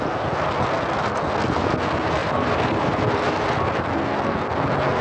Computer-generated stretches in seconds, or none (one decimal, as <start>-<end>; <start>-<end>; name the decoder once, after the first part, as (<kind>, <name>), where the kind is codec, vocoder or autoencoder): 2.2-3.3 (vocoder, BigVGAN v2)